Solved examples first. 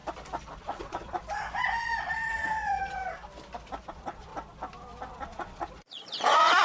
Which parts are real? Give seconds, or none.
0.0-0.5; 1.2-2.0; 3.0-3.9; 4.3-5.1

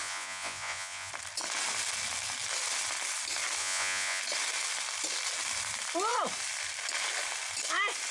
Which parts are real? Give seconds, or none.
1.1-3.6; 4.2-8.1

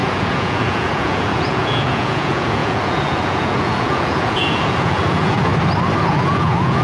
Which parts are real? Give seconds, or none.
5.5-6.1

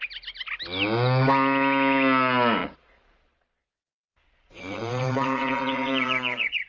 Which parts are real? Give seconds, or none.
0.0-2.6

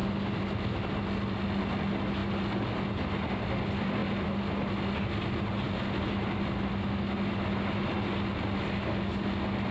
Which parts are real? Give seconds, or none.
0.0-9.7

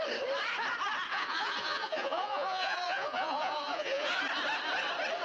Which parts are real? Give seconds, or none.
0.0-1.1; 4.2-5.2

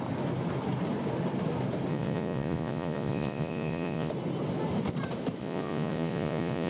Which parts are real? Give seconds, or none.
0.0-1.9; 4.1-5.4

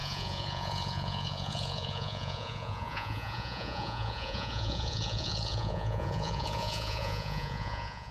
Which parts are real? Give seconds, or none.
none